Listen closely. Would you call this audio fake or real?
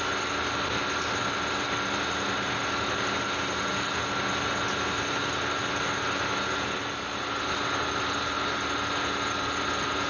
real